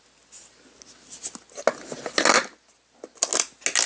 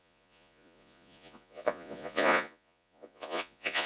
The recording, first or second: first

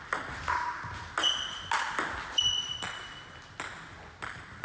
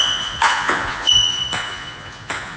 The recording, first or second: first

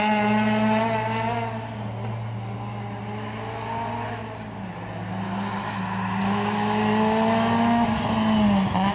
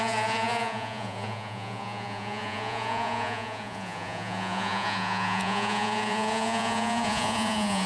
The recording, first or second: first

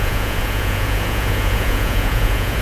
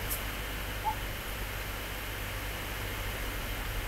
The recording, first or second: second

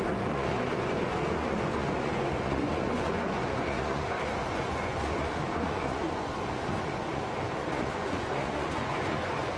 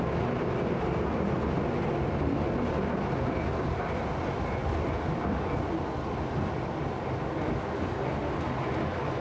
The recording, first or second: second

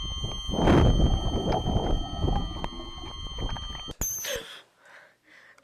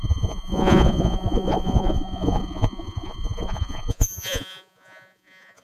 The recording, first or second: first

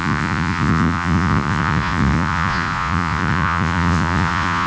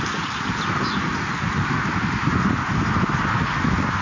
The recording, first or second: second